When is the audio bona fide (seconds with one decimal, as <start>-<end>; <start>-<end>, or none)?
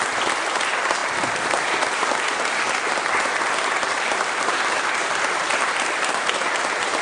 0.0-1.0; 4.7-5.5; 6.2-7.0